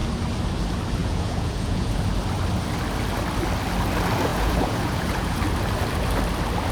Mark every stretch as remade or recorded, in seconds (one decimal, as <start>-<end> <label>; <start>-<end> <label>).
0.0-1.0 recorded; 1.0-2.0 remade; 2.0-4.3 recorded; 4.3-5.4 remade; 5.4-6.7 recorded